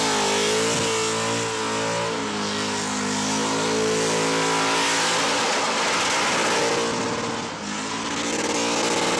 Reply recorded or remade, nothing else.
recorded